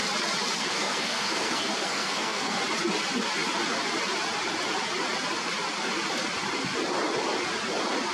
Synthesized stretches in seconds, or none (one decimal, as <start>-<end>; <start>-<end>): 0.6-2.6